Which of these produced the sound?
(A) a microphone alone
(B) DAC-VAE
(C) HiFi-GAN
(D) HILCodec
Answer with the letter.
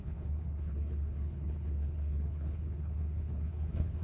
D